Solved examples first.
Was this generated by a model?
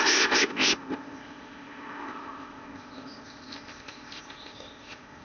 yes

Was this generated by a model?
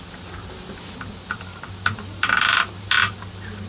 no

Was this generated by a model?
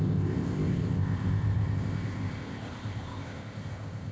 yes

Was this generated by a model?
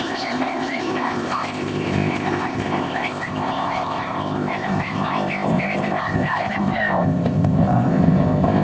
yes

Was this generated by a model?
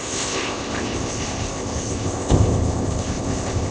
yes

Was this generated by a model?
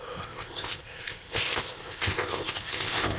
yes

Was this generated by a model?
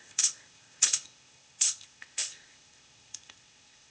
yes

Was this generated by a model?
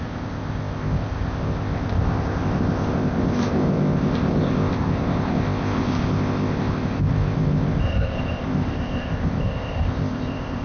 yes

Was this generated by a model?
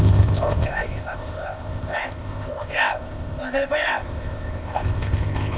yes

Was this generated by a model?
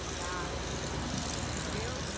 no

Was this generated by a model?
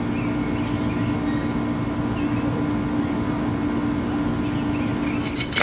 no